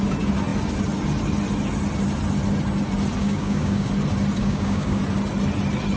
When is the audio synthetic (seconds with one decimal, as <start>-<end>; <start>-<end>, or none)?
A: 3.2-3.9; 4.4-5.0